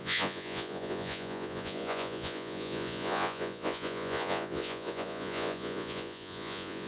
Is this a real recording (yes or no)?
no